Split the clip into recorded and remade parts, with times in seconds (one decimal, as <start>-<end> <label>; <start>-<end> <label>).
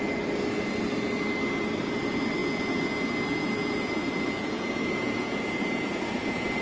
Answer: 0.0-2.4 recorded; 2.4-6.6 remade